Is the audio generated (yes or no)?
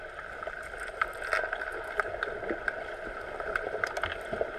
no